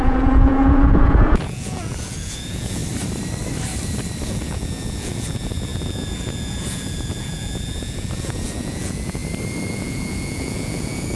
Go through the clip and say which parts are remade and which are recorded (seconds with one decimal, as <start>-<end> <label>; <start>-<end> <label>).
0.0-2.8 remade; 2.8-4.2 recorded; 4.2-9.2 remade; 9.2-9.7 recorded; 9.7-11.2 remade

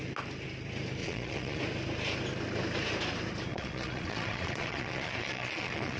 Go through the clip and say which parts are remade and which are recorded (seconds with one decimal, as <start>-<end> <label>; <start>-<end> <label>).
0.0-1.0 recorded; 1.0-1.6 remade; 1.6-3.5 recorded; 3.5-6.0 remade